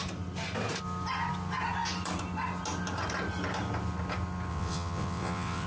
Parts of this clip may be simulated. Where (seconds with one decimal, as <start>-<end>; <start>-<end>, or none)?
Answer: 4.5-5.7